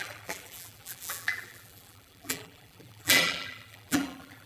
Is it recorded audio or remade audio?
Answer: remade